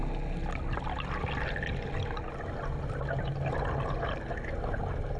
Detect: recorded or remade recorded